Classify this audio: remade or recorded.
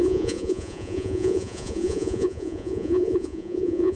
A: remade